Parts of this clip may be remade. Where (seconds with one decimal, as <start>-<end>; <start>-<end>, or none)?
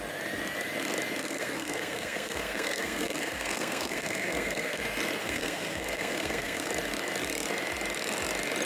1.2-4.8; 5.2-6.7